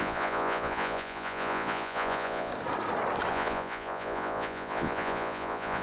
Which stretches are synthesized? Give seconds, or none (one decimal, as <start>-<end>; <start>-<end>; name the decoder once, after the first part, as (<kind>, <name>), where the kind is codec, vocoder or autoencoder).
0.0-2.5 (vocoder, Vocos); 3.3-5.8